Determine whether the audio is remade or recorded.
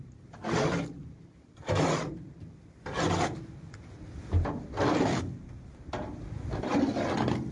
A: recorded